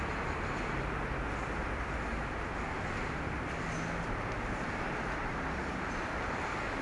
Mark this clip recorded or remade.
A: recorded